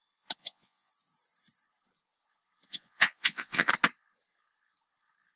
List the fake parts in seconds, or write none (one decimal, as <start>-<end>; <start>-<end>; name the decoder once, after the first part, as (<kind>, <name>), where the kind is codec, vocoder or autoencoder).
0.4-0.9 (vocoder, Vocos); 2.7-3.7